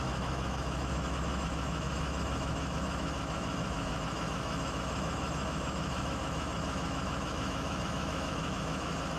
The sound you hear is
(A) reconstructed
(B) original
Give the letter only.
A